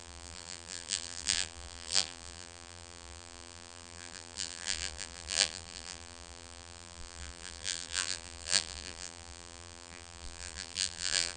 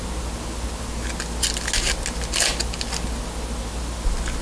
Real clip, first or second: second